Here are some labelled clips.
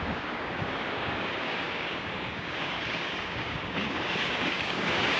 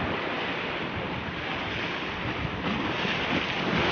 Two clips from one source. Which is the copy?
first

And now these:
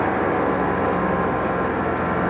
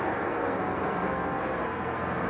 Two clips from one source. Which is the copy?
second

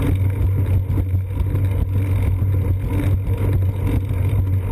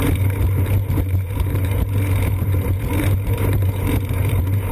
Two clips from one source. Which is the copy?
second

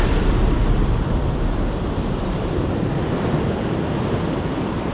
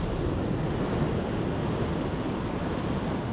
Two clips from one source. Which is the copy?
first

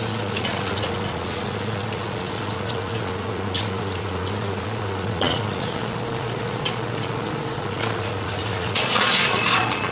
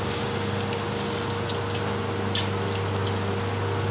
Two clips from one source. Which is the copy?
first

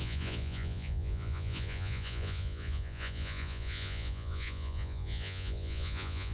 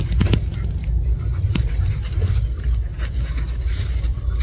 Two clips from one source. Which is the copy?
first